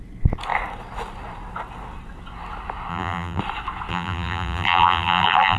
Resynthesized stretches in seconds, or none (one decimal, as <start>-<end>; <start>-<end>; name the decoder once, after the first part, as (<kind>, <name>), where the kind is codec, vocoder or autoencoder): 2.9-3.4 (vocoder, BigVGAN v2); 3.9-5.6